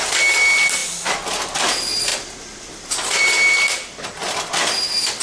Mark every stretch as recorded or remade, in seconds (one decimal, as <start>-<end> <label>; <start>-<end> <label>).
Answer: 0.0-2.1 recorded; 2.1-2.9 remade; 2.9-5.2 recorded